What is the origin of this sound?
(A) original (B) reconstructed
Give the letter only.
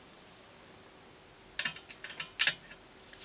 A